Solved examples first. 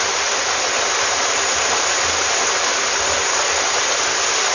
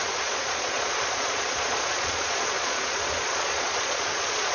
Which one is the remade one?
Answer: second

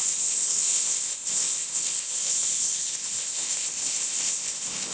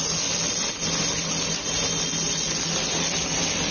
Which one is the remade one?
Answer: first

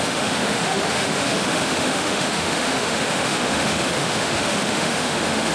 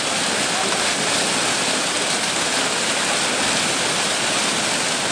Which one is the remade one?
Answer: first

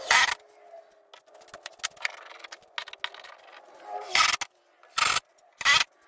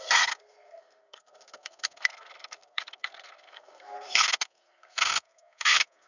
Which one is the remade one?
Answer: second